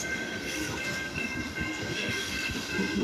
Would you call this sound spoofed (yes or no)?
yes